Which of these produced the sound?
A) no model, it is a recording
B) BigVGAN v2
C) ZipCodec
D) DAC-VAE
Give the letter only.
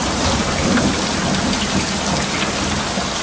A